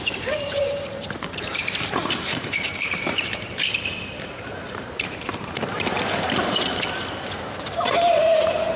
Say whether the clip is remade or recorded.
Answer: remade